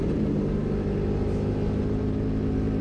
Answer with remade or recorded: recorded